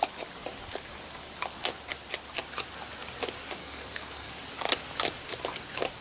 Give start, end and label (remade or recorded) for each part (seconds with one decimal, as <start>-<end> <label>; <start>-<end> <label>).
0.0-3.6 recorded; 3.6-4.3 remade; 4.3-6.0 recorded